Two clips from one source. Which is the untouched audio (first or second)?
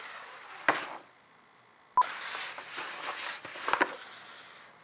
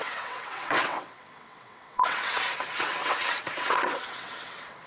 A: first